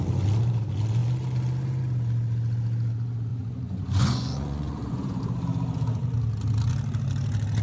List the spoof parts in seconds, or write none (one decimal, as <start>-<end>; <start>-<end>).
3.3-5.2